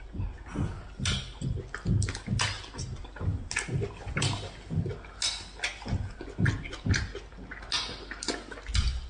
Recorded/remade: recorded